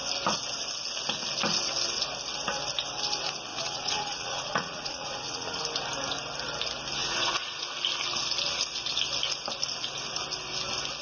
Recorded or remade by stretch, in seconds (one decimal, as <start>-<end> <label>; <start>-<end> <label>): 0.0-3.5 recorded; 3.5-5.6 remade; 5.6-7.0 recorded; 7.0-7.6 remade; 7.6-11.0 recorded